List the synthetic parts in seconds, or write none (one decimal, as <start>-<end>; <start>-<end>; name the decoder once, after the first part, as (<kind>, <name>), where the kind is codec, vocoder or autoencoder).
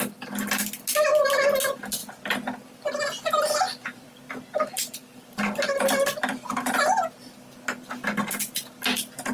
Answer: 2.0-6.5 (vocoder, BigVGAN v2)